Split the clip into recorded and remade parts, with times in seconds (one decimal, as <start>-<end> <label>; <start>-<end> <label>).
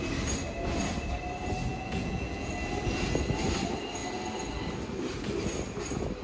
0.0-1.7 recorded; 1.7-2.5 remade; 2.5-6.2 recorded